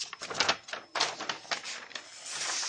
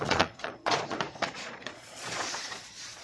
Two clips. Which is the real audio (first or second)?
first